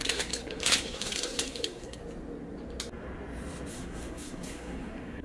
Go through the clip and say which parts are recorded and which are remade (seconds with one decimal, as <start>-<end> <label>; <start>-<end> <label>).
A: 0.0-2.0 remade; 2.0-3.7 recorded; 3.7-5.2 remade